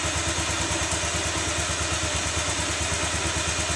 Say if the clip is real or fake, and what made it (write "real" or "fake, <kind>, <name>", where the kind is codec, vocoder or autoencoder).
real